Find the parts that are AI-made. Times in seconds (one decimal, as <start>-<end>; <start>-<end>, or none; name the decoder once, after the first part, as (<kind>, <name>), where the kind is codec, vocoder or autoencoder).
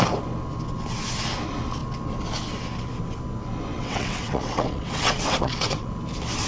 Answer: 3.7-5.9 (vocoder, WaveNeXt)